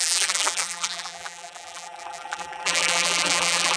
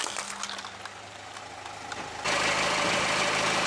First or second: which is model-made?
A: first